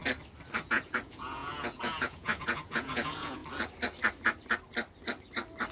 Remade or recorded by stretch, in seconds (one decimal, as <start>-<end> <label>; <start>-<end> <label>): 0.0-0.7 recorded; 0.7-3.4 remade; 3.4-5.7 recorded